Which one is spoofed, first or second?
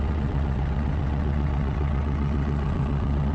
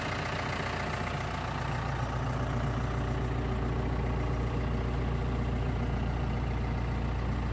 first